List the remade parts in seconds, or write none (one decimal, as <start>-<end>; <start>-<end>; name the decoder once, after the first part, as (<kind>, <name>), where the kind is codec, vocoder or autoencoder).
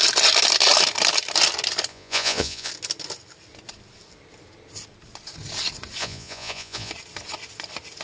1.9-2.7 (vocoder, Vocos); 6.0-6.9